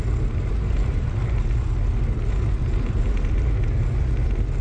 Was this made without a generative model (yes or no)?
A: yes